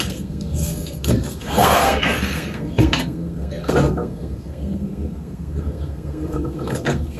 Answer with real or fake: fake